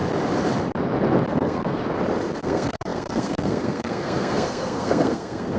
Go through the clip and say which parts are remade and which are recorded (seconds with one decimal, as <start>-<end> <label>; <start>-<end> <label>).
0.0-1.3 recorded; 1.3-1.8 remade; 1.8-2.4 recorded; 2.4-5.6 remade